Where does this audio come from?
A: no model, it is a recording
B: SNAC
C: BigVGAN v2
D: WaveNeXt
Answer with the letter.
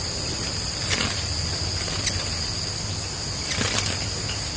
C